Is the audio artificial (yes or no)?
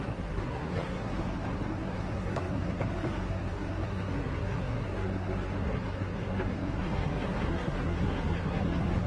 yes